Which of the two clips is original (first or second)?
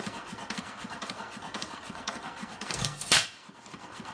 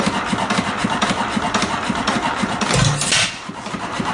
second